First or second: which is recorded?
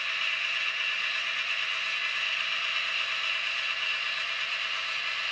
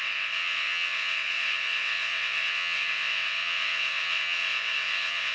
first